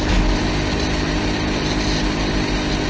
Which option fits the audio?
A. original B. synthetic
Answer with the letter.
A